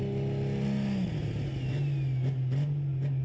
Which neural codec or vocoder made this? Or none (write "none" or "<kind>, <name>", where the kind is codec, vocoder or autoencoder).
none